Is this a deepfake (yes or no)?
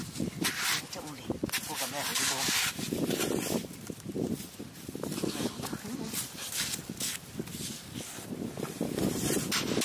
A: yes